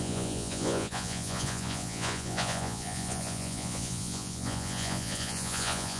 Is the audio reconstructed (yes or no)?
yes